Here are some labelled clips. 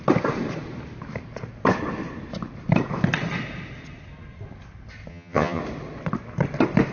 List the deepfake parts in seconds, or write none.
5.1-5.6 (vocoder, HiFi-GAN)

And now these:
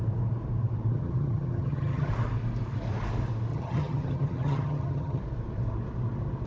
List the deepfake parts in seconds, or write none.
0.9-2.1 (vocoder, HiFi-GAN); 3.5-5.2

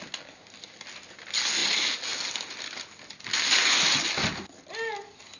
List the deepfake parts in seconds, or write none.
none

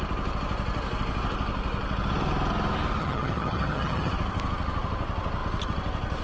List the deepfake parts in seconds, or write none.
3.0-4.1 (vocoder, HiFi-GAN)